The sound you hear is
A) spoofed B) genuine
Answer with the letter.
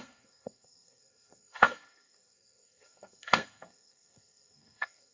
A